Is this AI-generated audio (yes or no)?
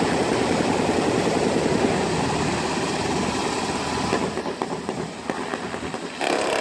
no